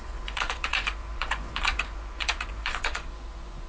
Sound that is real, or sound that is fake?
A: fake